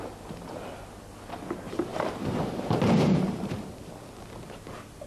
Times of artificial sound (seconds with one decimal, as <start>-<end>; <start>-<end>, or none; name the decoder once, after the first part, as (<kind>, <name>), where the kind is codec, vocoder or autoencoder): 1.9-3.7 (vocoder, BigVGAN v2)